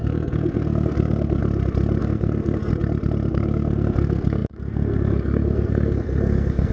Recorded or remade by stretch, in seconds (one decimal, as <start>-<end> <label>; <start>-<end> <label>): 0.0-1.4 remade; 1.4-2.0 recorded; 2.0-2.7 remade; 2.7-3.3 recorded; 3.3-6.7 remade